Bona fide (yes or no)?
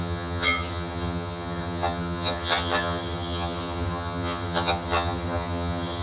no